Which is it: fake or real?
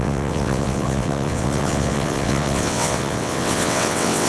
fake